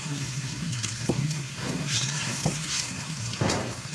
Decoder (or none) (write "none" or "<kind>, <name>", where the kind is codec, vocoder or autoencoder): codec, SNAC